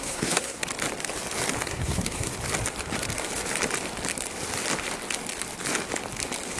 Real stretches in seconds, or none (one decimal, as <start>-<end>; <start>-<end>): 0.6-1.6; 2.3-6.6